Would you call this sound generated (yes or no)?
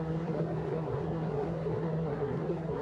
yes